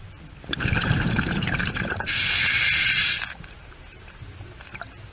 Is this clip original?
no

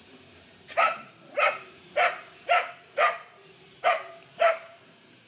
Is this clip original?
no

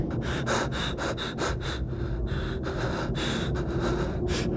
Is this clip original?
yes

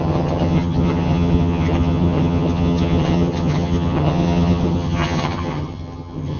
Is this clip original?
no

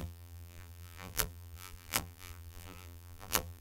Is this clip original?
no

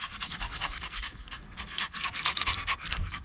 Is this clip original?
no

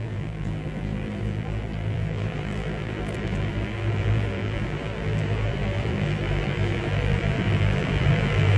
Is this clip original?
no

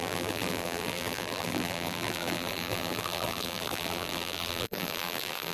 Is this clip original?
no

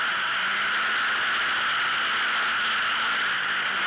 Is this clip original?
yes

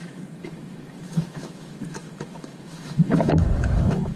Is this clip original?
no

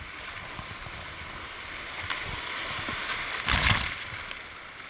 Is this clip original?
yes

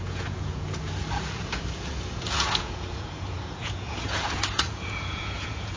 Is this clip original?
no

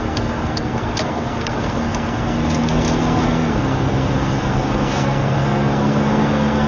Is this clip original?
no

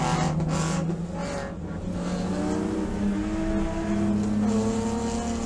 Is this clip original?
yes